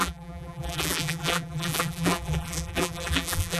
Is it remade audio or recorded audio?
remade